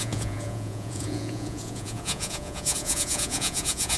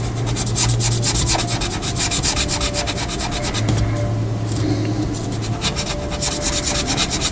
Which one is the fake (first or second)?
first